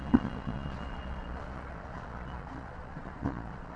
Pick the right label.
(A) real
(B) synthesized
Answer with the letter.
B